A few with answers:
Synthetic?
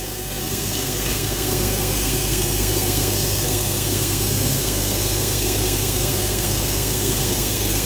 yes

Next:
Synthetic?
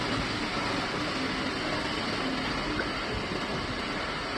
no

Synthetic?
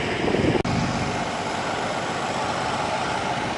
no